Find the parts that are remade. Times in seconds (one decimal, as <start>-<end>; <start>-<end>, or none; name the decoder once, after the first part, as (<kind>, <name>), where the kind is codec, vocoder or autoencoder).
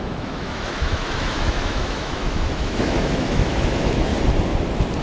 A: 0.0-4.1 (autoencoder, DAC-VAE)